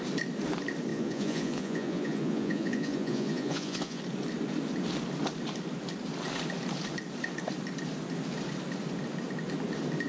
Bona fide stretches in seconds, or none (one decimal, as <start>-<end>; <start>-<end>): 0.0-0.9; 4.0-10.1